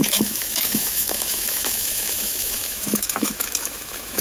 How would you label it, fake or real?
fake